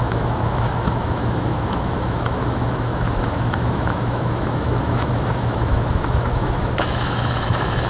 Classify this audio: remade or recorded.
remade